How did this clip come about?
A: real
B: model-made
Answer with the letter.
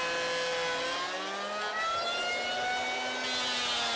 A